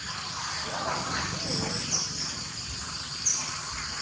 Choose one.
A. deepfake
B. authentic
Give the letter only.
B